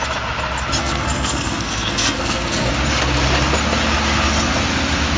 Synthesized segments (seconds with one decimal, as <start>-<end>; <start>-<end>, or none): 0.8-2.7

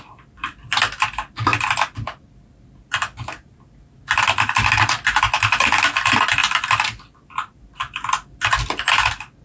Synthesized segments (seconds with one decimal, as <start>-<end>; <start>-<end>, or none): none

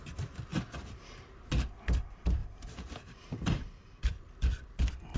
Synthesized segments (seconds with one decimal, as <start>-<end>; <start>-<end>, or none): 0.5-1.4; 2.4-4.8

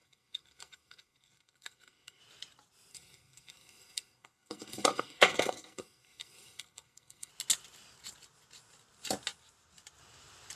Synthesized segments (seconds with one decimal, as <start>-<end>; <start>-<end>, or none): 0.0-2.2; 2.9-7.3

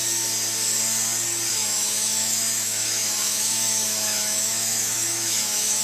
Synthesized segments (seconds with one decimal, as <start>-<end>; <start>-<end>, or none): 1.5-5.8

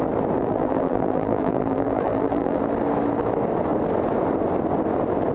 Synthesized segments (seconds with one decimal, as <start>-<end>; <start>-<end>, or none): 0.4-2.6

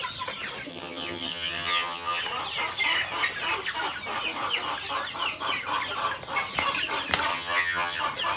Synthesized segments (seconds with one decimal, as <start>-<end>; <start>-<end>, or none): 0.7-2.2; 7.3-8.0

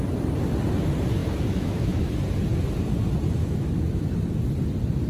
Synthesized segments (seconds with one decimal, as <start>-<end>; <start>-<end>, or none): 1.2-2.1; 3.4-4.0